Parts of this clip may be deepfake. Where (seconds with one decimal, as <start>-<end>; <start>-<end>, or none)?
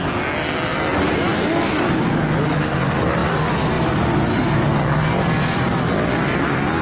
none